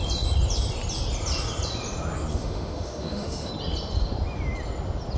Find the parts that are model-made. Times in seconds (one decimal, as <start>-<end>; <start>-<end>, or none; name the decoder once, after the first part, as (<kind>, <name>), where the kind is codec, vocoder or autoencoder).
2.3-3.5 (autoencoder, DAC-VAE)